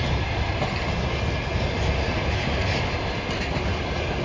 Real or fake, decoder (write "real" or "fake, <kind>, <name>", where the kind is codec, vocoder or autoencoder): real